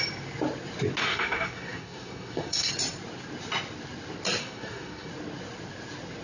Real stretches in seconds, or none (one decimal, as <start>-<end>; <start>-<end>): 0.0-1.0; 2.7-4.4; 5.1-6.2